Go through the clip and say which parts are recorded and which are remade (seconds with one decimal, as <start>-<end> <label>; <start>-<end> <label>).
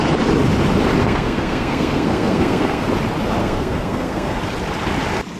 0.0-1.0 recorded; 1.0-2.9 remade; 2.9-3.4 recorded; 3.4-4.4 remade; 4.4-5.4 recorded